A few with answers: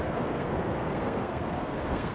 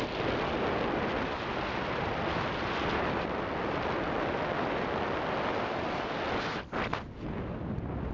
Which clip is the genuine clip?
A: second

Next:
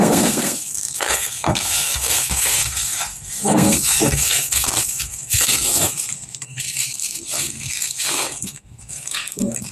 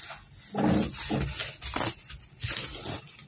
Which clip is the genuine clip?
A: second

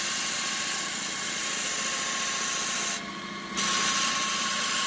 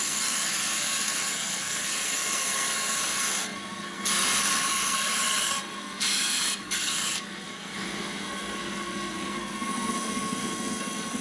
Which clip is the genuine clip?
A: first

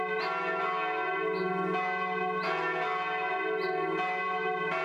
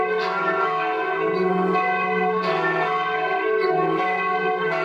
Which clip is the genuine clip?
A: first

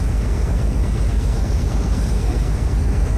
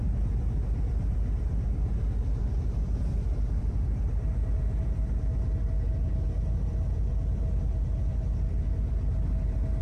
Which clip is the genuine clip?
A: second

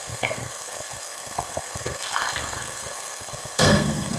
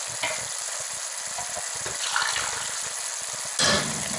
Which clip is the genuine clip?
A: second